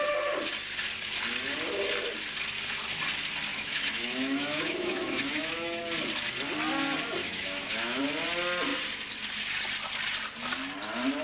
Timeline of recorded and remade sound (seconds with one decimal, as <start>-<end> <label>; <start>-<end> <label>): 0.0-3.5 recorded; 3.5-5.8 remade; 5.8-7.2 recorded; 7.2-8.0 remade; 8.0-11.2 recorded